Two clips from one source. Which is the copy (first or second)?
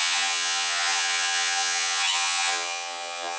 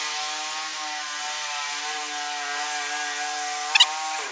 first